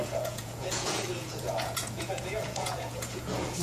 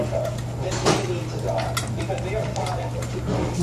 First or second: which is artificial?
first